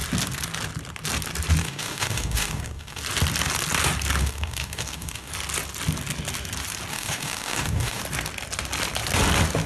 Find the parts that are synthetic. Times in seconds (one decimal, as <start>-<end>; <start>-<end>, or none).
1.6-3.0; 4.2-5.3; 6.9-8.0